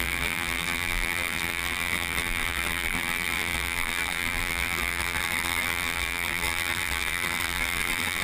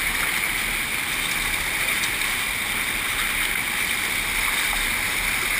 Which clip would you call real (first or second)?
second